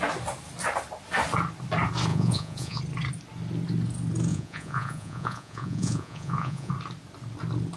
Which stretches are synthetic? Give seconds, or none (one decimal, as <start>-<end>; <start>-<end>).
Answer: 2.1-2.8; 4.3-6.7